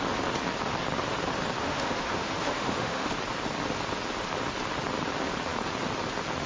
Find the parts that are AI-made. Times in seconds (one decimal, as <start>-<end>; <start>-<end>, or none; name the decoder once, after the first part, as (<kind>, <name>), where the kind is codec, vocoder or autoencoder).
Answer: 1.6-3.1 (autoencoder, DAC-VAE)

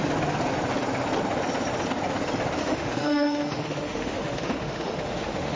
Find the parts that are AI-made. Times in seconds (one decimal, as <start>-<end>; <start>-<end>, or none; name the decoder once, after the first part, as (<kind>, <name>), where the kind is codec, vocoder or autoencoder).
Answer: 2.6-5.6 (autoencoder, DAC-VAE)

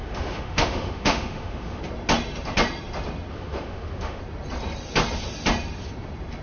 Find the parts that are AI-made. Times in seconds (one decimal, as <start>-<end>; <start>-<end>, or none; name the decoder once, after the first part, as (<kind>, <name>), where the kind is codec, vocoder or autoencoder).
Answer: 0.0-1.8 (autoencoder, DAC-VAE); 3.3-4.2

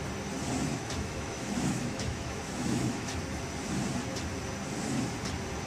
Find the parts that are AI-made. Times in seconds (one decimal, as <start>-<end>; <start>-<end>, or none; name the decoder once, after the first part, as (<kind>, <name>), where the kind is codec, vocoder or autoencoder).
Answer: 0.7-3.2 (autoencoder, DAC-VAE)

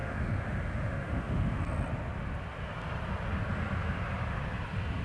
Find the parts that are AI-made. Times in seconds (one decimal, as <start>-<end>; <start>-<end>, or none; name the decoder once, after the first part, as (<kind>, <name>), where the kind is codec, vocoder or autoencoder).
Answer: 0.0-1.6 (autoencoder, DAC-VAE)

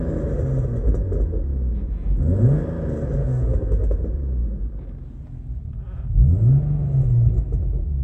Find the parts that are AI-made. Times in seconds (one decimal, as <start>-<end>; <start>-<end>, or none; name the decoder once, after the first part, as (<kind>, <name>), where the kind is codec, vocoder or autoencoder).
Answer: 3.2-4.0 (autoencoder, DAC-VAE)

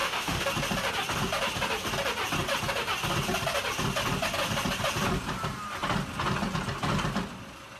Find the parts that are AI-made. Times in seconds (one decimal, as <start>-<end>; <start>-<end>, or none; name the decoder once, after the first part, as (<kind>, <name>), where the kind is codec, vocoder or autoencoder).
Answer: 0.0-0.5 (autoencoder, DAC-VAE)